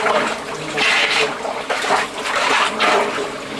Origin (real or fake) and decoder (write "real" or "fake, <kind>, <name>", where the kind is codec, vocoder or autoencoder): fake, vocoder, BigVGAN v2